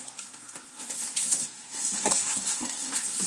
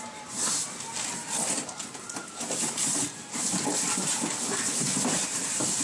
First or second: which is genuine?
second